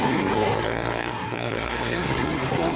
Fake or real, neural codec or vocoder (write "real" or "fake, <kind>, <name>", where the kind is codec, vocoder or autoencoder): fake, codec, SNAC